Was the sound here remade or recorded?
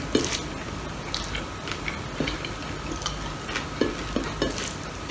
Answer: recorded